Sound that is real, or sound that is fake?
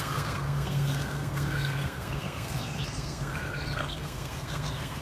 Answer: fake